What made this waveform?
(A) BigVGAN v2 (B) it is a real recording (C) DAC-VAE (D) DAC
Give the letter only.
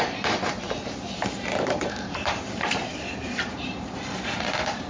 A